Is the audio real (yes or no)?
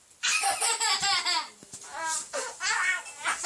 yes